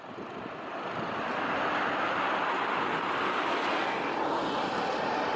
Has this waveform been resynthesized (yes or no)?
no